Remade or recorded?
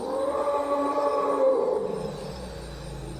recorded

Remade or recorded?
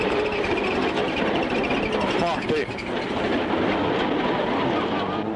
recorded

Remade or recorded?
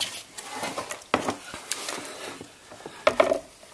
recorded